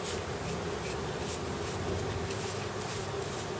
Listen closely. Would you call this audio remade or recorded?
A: recorded